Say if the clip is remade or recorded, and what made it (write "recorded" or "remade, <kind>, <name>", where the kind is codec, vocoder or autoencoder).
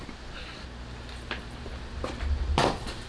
recorded